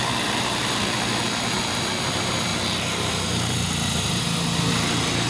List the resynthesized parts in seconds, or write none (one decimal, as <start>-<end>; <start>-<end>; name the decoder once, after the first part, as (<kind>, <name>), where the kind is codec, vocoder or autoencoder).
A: 0.0-1.1 (vocoder, BigVGAN v2); 2.5-4.2